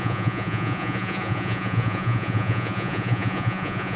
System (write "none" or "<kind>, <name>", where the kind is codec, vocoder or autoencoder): vocoder, Vocos